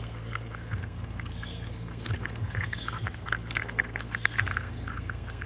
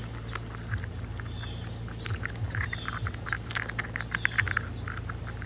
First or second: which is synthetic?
first